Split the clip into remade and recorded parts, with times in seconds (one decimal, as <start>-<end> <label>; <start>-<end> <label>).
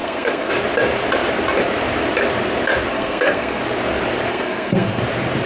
0.0-0.5 remade; 0.5-2.9 recorded; 2.9-3.6 remade; 3.6-4.3 recorded; 4.3-5.0 remade; 5.0-5.5 recorded